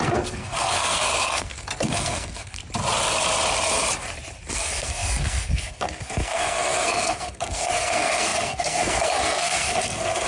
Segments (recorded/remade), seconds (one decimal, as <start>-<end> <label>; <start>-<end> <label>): 0.0-2.6 remade; 2.6-4.5 recorded; 4.5-10.3 remade